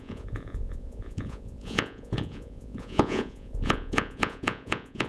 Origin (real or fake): fake